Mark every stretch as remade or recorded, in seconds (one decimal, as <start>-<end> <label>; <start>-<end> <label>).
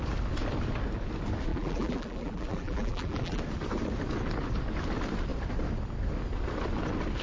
0.0-1.5 recorded; 1.5-3.4 remade; 3.4-7.2 recorded